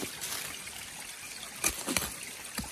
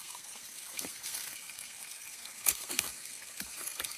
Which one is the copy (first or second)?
second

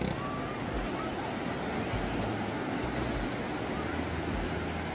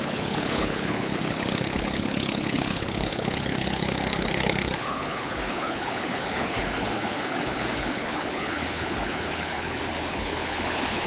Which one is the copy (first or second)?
second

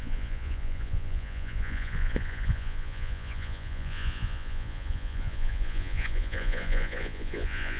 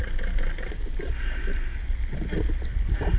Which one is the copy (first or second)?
first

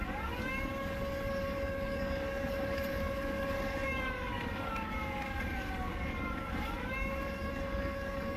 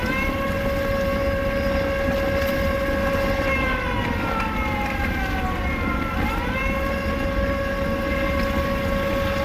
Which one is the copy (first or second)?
first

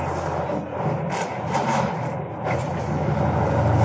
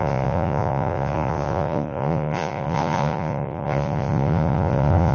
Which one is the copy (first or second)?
second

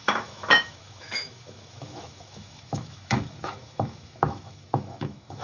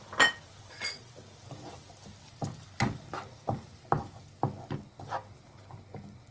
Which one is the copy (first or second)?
first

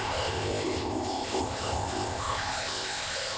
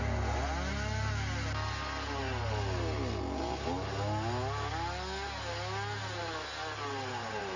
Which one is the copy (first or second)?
first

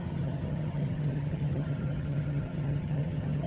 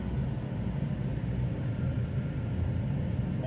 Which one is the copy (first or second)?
first